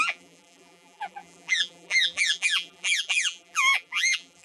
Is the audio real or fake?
fake